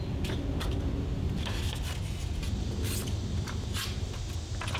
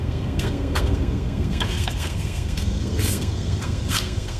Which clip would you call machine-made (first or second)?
second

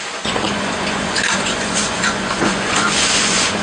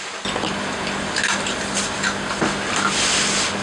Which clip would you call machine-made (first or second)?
first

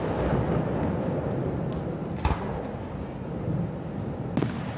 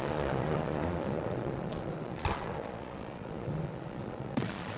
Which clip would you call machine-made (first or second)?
second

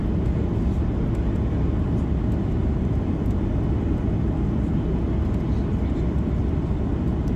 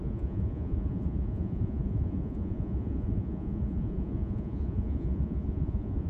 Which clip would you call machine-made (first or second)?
second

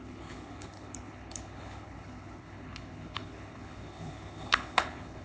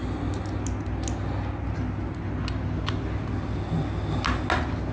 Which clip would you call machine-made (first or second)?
first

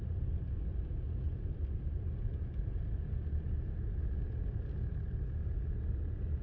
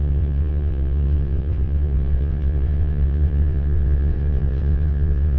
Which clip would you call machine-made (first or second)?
second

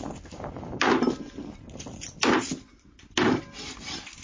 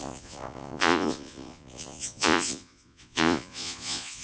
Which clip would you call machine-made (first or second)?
second